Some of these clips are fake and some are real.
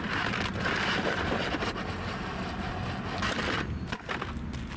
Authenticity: real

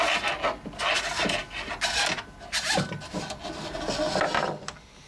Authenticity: real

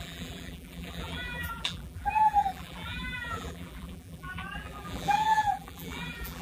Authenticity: fake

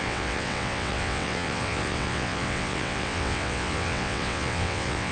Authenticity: fake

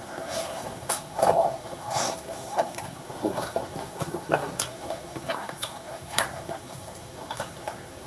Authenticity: fake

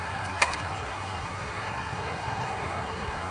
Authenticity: fake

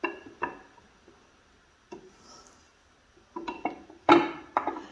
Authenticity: real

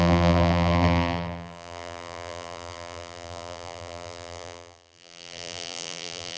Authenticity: fake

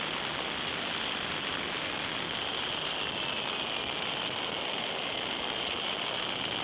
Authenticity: real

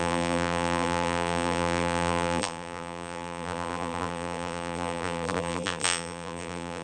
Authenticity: fake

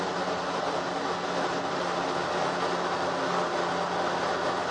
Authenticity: real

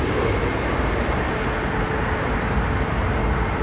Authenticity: real